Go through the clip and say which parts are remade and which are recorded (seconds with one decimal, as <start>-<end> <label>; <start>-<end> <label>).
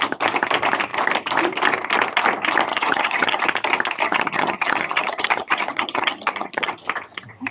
0.0-2.7 recorded; 2.7-3.4 remade; 3.4-4.0 recorded; 4.0-6.7 remade; 6.7-7.5 recorded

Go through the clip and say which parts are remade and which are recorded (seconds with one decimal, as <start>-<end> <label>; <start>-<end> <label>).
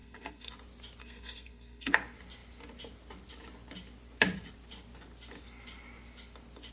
0.0-0.5 remade; 0.5-1.0 recorded; 1.0-1.9 remade; 1.9-6.7 recorded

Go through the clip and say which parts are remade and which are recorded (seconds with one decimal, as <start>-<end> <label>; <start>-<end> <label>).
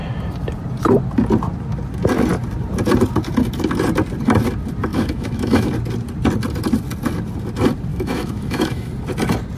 0.0-4.9 recorded; 4.9-5.7 remade; 5.7-7.9 recorded; 7.9-8.9 remade; 8.9-9.6 recorded